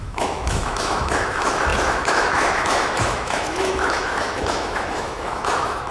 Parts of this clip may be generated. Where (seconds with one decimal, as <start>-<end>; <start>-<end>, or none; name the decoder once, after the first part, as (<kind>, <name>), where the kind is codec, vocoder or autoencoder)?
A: 0.0-5.9 (autoencoder, DAC-VAE)